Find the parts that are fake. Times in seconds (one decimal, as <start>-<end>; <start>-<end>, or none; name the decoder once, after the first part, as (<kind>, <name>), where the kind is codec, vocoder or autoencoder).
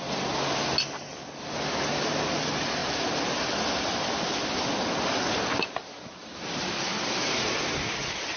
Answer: none